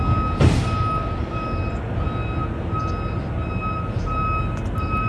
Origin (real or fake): real